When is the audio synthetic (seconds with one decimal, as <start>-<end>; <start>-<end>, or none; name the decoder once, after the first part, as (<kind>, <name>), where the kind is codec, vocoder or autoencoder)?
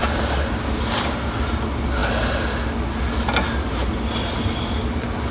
none